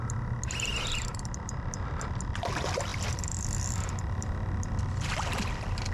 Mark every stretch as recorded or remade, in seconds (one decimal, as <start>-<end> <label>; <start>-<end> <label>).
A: 0.0-5.9 recorded